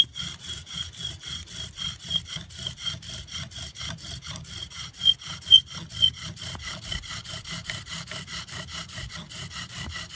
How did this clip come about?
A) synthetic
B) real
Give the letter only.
B